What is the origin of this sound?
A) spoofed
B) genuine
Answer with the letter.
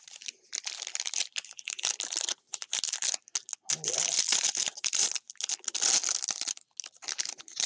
B